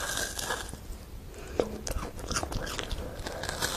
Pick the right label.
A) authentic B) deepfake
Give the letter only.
A